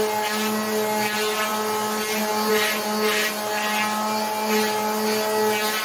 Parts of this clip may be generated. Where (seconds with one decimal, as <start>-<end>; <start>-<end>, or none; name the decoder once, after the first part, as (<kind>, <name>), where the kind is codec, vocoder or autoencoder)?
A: none